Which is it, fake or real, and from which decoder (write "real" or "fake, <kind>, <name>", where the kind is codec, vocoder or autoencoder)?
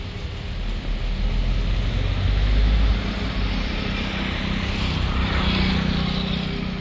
real